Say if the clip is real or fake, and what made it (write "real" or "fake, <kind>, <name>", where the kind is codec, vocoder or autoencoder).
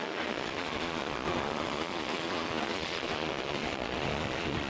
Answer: fake, vocoder, Vocos